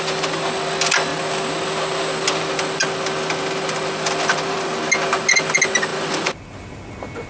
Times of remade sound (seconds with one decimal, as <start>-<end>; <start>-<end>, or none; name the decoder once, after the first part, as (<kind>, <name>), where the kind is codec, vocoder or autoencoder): none